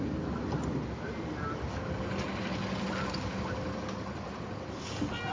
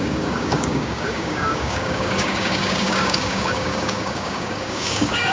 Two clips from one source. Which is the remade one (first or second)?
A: second